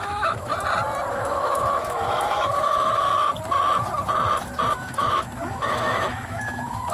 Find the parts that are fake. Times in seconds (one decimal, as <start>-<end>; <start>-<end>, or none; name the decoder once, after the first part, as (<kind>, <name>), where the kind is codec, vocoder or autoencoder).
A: 0.0-0.5 (autoencoder, DAC-VAE); 1.1-3.1; 4.7-6.9